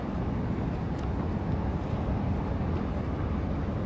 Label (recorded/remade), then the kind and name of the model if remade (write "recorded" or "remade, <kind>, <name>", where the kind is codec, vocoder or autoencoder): recorded